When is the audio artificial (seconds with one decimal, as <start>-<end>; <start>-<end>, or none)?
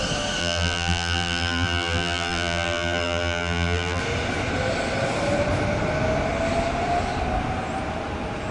0.4-4.0